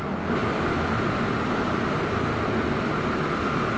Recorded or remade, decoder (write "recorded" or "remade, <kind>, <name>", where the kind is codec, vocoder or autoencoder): recorded